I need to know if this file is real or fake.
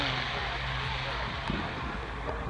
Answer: real